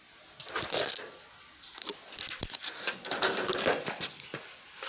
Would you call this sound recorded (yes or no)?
yes